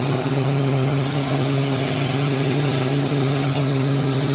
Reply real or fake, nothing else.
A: fake